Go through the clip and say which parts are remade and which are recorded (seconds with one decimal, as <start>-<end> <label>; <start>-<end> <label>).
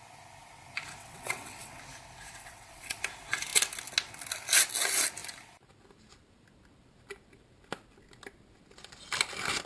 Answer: 0.0-1.0 recorded; 1.0-1.8 remade; 1.8-2.4 recorded; 2.4-3.0 remade; 3.0-9.7 recorded